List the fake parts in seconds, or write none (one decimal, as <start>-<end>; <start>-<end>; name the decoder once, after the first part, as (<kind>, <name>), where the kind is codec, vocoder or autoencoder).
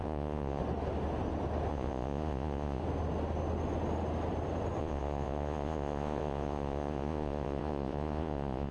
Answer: 0.0-0.6 (vocoder, Vocos); 1.7-2.8; 4.8-8.7